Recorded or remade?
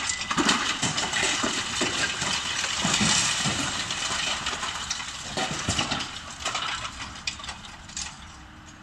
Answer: recorded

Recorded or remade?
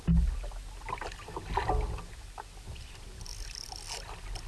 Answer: recorded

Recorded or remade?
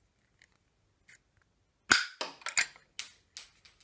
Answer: recorded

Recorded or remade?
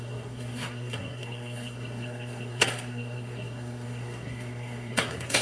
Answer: remade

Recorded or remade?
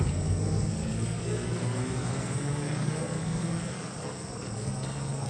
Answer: remade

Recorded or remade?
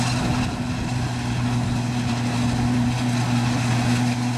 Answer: recorded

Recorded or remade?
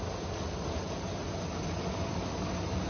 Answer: recorded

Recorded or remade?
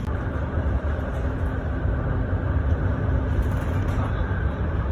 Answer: recorded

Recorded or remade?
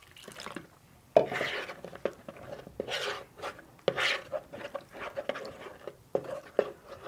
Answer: recorded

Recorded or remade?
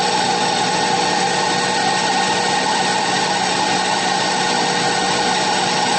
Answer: recorded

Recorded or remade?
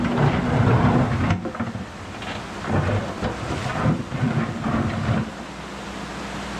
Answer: recorded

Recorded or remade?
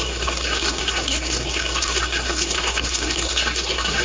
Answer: remade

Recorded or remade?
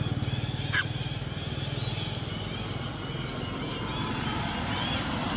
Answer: recorded